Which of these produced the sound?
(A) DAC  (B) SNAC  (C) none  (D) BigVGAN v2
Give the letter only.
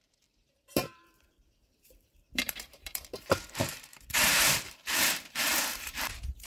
D